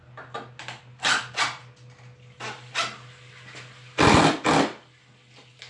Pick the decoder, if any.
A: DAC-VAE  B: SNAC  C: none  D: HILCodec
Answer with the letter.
C